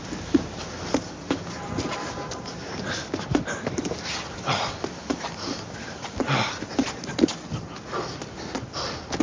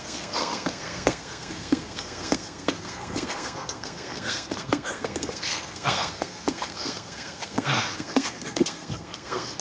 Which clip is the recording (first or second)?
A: first